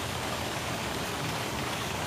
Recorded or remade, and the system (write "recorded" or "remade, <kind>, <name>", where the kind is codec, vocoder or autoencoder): remade, codec, DAC